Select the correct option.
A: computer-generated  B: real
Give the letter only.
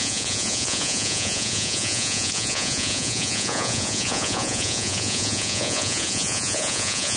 A